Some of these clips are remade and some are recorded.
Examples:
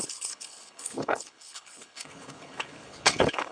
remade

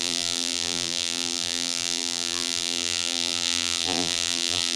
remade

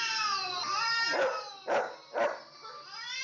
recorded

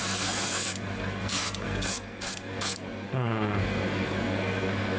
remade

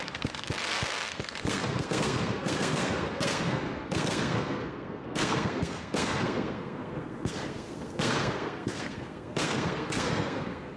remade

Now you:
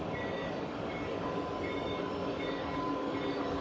remade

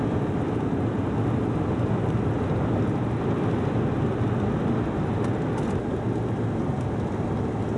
recorded